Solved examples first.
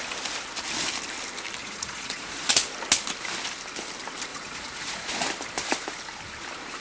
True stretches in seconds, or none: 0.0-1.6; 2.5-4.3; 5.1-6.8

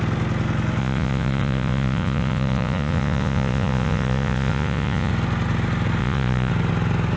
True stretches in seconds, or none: 0.0-0.8; 5.1-6.0; 6.5-7.2

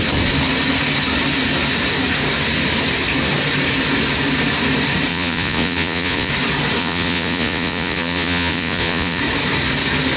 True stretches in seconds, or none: 0.0-5.1; 6.3-6.8; 9.2-10.2

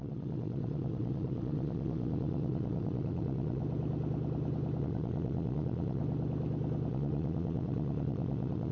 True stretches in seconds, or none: 3.6-4.8; 6.0-6.9

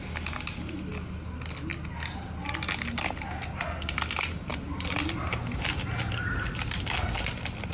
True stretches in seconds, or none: 0.0-7.7

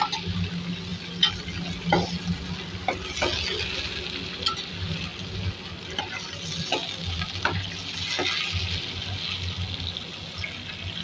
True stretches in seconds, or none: 0.0-11.0